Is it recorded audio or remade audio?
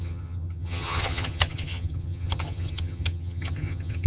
remade